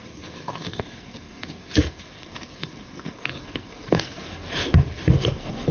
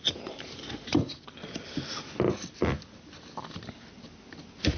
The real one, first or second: second